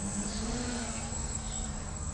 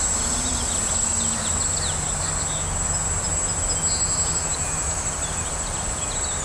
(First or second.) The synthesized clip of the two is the first